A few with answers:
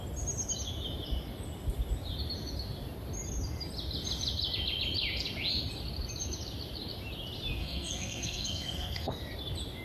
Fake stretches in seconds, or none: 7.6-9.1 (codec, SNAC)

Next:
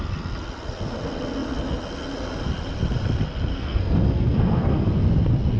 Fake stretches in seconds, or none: 3.5-4.9 (codec, SNAC)